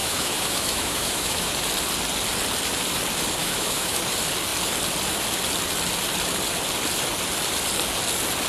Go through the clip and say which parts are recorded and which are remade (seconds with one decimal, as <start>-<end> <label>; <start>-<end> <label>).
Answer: 0.0-1.5 remade; 1.5-3.4 recorded; 3.4-4.0 remade; 4.0-8.5 recorded